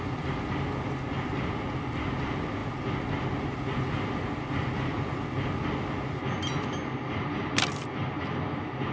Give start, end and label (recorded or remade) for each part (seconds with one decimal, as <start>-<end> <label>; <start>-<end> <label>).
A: 0.0-8.9 recorded